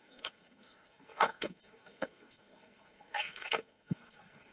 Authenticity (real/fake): fake